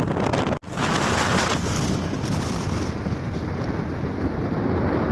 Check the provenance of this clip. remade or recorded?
recorded